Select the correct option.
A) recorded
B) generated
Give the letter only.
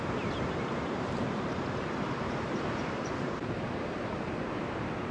B